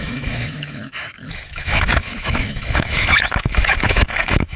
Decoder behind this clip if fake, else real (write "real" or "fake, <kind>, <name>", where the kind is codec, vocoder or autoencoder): fake, autoencoder, DAC-VAE